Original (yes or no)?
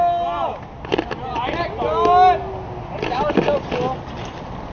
yes